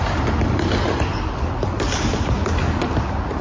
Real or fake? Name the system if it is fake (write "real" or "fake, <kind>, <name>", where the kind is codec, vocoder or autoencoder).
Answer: real